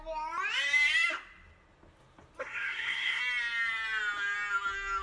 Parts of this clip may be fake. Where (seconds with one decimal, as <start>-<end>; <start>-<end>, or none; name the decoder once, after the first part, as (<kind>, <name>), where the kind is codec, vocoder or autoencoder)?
2.4-3.2 (codec, SNAC)